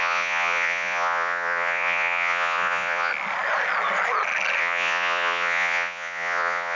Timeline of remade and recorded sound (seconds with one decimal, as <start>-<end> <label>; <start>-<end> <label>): 0.0-3.1 remade; 3.1-4.6 recorded; 4.6-6.7 remade